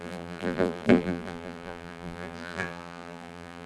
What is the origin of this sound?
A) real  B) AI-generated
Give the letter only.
B